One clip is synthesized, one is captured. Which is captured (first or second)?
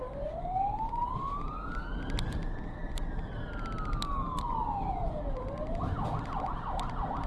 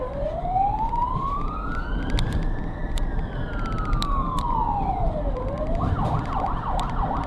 first